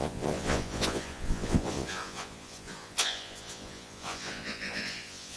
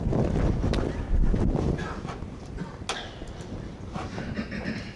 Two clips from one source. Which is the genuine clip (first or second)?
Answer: second